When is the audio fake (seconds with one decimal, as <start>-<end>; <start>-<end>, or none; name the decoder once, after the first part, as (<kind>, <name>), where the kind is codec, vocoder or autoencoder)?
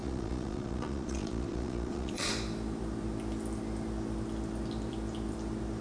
0.0-2.3 (vocoder, Vocos)